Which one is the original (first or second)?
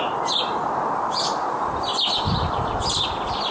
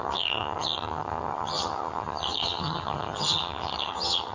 first